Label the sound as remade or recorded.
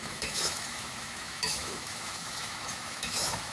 remade